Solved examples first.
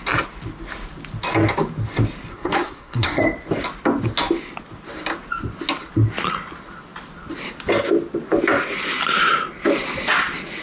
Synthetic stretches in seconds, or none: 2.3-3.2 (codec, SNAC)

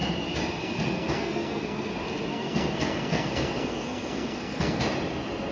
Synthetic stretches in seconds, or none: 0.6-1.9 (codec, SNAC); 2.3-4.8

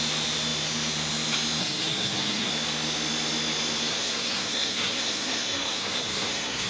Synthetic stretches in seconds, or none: 1.6-2.5 (codec, SNAC); 3.9-6.7

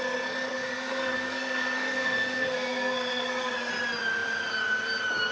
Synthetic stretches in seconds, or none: 0.5-3.7 (codec, SNAC)

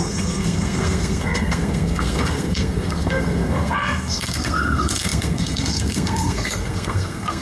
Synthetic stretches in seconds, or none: 0.0-7.4 (codec, SNAC)

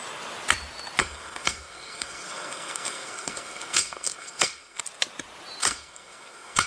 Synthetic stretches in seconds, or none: 1.0-4.8 (codec, SNAC); 5.6-6.7